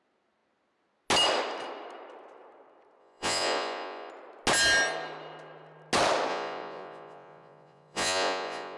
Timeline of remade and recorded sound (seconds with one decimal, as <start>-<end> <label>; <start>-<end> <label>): 0.0-3.0 recorded; 3.0-4.1 remade; 4.1-6.3 recorded; 6.3-8.8 remade

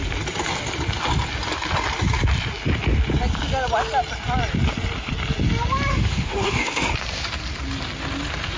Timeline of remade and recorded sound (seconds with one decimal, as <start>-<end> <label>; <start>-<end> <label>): 0.0-5.9 recorded; 5.9-6.9 remade; 6.9-8.6 recorded

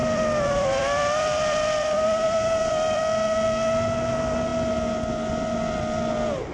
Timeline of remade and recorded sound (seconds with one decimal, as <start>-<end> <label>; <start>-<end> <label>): 0.0-3.0 remade; 3.0-6.5 recorded

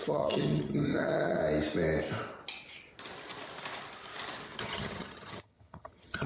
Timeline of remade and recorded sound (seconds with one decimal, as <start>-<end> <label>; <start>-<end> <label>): 0.0-1.4 remade; 1.4-4.6 recorded; 4.6-6.3 remade

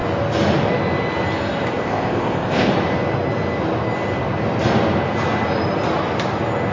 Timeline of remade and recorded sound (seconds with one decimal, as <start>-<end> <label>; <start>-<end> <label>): 0.0-1.8 recorded; 1.8-2.7 remade; 2.7-6.7 recorded